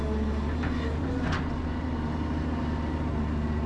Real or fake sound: real